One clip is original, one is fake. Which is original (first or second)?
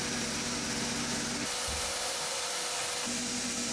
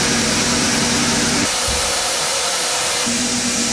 first